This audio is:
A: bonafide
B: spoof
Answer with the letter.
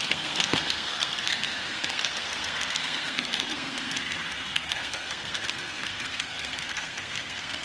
B